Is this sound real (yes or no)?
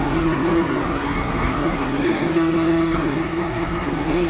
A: no